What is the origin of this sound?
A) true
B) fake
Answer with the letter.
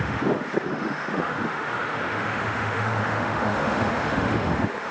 B